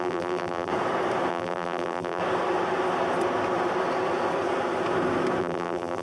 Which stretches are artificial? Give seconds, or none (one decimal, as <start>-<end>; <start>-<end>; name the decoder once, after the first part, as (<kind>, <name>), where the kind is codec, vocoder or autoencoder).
0.0-0.7 (vocoder, BigVGAN v2); 1.3-2.2; 5.4-6.0